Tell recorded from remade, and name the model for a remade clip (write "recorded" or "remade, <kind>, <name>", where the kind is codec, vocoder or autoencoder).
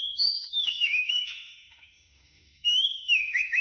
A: remade, autoencoder, DAC-VAE